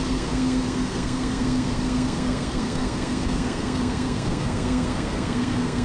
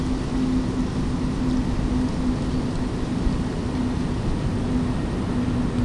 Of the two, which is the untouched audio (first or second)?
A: second